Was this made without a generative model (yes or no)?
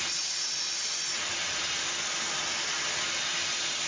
yes